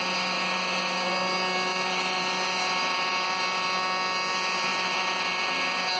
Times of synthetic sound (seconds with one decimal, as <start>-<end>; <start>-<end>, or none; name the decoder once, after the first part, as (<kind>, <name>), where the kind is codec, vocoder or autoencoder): 1.7-3.4 (vocoder, BigVGAN v2); 4.7-5.3